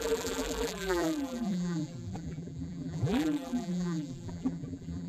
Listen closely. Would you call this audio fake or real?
fake